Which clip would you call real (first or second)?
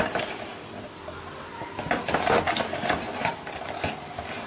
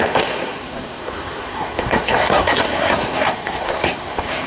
first